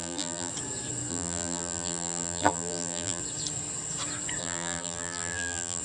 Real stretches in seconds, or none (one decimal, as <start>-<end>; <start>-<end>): 0.5-1.1; 3.2-4.4